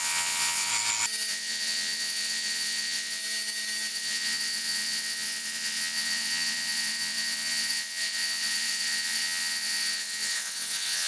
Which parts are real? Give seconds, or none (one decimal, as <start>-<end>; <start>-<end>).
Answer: 0.7-1.3; 3.2-3.9